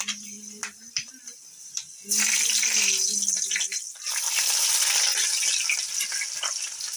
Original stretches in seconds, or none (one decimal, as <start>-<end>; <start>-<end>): 0.6-4.5; 5.1-6.1